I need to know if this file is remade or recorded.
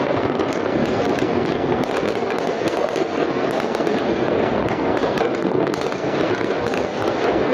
remade